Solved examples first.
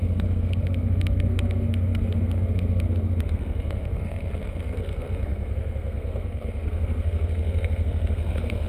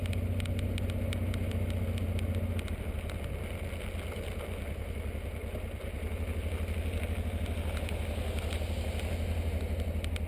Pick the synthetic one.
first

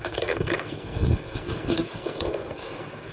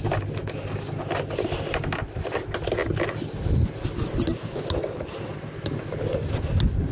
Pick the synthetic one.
first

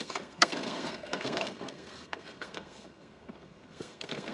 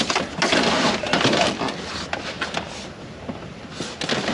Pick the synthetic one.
first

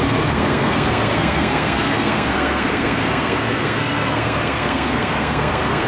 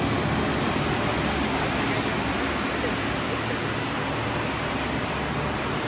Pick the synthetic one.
first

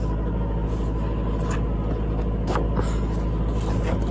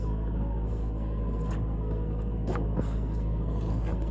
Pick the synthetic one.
second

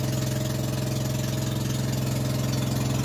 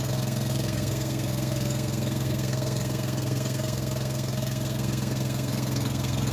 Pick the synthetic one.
second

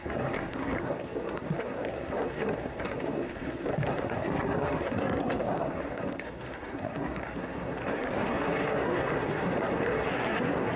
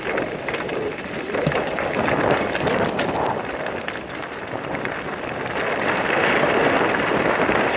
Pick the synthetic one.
first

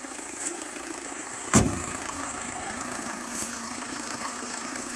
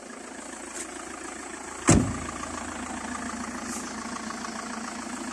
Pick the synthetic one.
first